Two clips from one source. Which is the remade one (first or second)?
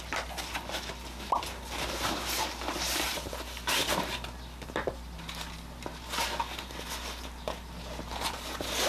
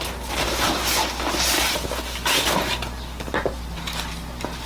first